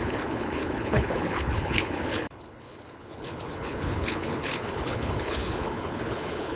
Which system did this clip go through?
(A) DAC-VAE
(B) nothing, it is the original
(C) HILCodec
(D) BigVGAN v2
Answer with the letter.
C